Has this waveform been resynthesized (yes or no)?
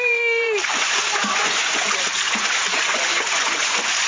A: yes